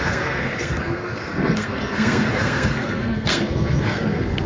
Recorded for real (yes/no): no